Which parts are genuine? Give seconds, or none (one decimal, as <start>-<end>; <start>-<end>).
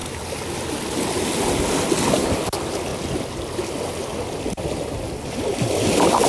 0.0-6.3